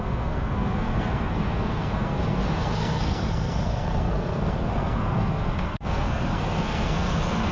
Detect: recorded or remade remade